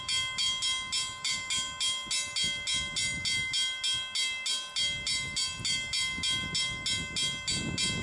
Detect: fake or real real